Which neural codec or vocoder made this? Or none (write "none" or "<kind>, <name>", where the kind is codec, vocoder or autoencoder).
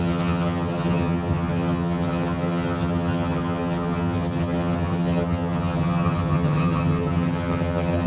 vocoder, HiFi-GAN